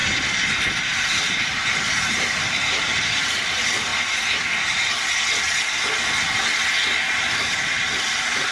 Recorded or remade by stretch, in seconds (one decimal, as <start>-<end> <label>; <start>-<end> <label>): 0.0-0.7 recorded; 0.7-3.9 remade; 3.9-7.0 recorded; 7.0-8.5 remade